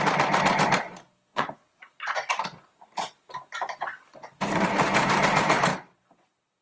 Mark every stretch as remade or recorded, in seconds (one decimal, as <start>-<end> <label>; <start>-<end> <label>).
0.0-1.3 recorded; 1.3-1.9 remade; 1.9-6.6 recorded